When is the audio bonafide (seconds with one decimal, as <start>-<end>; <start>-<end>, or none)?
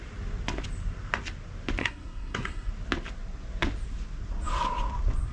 0.0-1.8; 2.7-5.3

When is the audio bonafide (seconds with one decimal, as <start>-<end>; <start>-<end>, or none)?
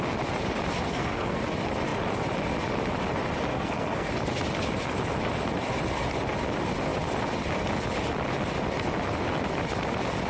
0.0-0.9; 1.4-3.5; 4.1-10.3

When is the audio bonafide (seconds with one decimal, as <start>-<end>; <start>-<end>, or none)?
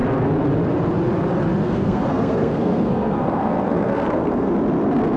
0.0-1.6; 4.5-5.2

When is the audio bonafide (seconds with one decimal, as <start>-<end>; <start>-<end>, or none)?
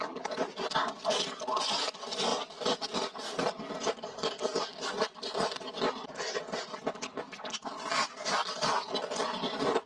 0.0-9.9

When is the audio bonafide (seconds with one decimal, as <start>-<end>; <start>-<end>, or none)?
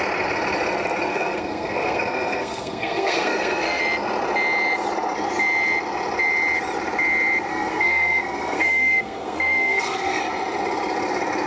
0.0-1.1; 3.8-7.5; 10.2-11.5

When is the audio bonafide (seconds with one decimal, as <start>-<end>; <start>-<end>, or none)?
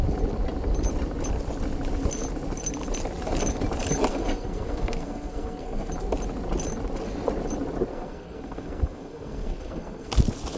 0.0-4.1; 5.9-7.9; 10.1-10.6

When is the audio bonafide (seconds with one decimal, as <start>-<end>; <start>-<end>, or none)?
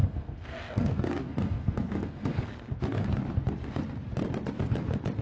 3.1-5.2